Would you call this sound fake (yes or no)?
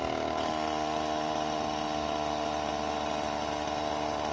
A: no